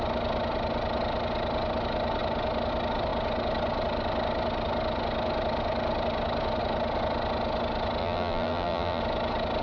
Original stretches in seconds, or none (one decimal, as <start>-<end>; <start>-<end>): 0.0-8.0; 9.0-9.6